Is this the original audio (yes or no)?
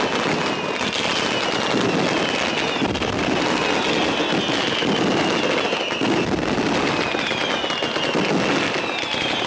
yes